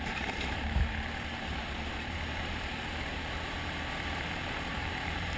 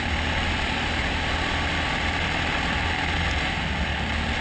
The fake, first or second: first